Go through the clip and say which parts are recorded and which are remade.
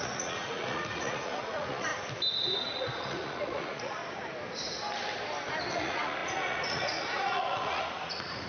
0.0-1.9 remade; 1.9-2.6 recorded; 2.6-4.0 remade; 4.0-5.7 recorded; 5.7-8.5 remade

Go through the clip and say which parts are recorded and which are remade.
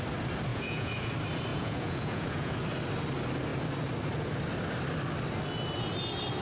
0.0-0.5 recorded; 0.5-1.1 remade; 1.1-1.5 recorded; 1.5-2.5 remade; 2.5-6.4 recorded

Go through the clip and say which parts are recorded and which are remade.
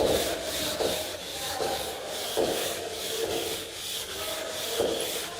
0.0-1.1 recorded; 1.1-4.3 remade; 4.3-5.4 recorded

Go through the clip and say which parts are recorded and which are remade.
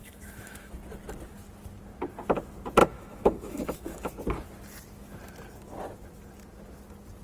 0.0-0.7 remade; 0.7-2.8 recorded; 2.8-4.1 remade; 4.1-7.2 recorded